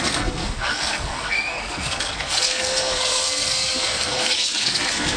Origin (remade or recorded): remade